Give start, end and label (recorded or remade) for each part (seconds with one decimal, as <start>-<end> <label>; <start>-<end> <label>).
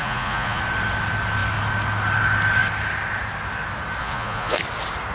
0.0-0.6 remade; 0.6-4.0 recorded; 4.0-4.6 remade; 4.6-5.1 recorded